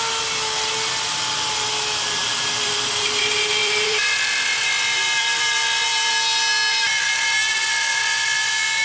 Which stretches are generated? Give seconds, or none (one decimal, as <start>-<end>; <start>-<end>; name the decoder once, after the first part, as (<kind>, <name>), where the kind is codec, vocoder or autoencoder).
2.2-2.9 (vocoder, BigVGAN v2); 3.6-6.1